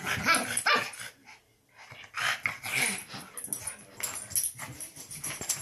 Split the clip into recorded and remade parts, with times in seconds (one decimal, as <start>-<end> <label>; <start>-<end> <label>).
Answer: 0.0-5.6 recorded